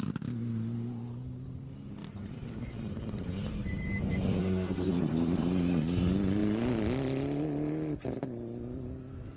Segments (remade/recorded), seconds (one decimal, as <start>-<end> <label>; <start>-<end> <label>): 0.0-4.4 recorded; 4.4-4.9 remade; 4.9-9.4 recorded

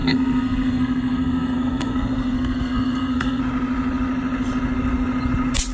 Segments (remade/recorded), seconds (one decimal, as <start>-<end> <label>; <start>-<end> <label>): 0.0-3.4 remade; 3.4-5.7 recorded

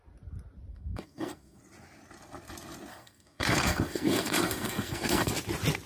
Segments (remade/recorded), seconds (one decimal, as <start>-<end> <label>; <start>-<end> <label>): 0.0-0.7 recorded; 0.7-1.6 remade; 1.6-2.9 recorded; 2.9-5.3 remade; 5.3-5.9 recorded

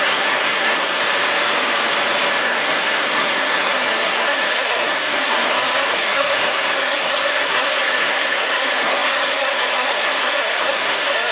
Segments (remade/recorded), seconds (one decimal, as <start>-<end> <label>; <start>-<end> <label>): 0.0-1.0 remade; 1.0-2.4 recorded; 2.4-11.3 remade

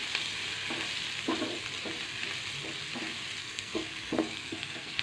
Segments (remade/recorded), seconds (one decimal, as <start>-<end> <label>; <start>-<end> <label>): 0.0-3.4 recorded; 3.4-5.0 remade

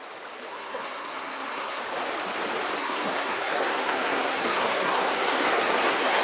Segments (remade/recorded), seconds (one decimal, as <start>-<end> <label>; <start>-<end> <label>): 0.0-0.5 recorded; 0.5-1.8 remade; 1.8-2.8 recorded; 2.8-6.2 remade

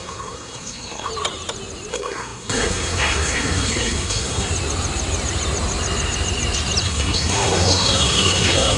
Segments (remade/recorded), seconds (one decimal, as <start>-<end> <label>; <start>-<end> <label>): 0.0-1.1 remade; 1.1-1.9 recorded; 1.9-4.5 remade; 4.5-6.8 recorded; 6.8-8.8 remade